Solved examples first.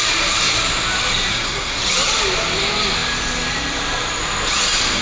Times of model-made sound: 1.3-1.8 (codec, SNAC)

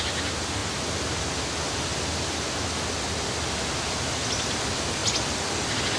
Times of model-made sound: none